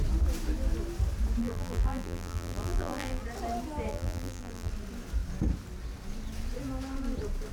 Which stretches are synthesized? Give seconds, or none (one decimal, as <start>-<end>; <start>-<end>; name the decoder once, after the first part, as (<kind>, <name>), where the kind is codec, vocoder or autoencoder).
1.4-3.2 (vocoder, BigVGAN v2); 3.9-4.7